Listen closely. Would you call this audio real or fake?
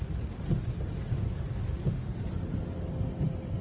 real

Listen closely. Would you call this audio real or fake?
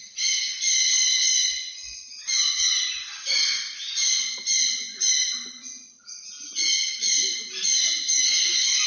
real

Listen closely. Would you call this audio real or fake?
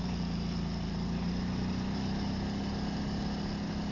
real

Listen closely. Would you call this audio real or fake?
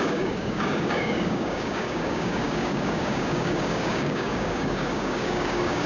fake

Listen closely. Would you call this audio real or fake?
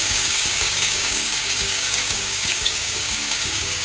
fake